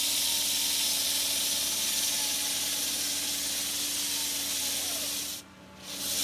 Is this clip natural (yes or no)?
yes